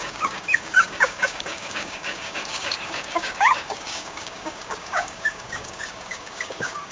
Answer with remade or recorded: remade